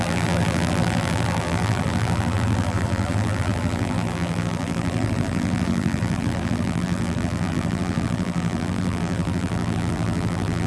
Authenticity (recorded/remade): remade